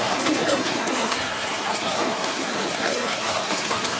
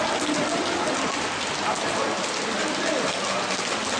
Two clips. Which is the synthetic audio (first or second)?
first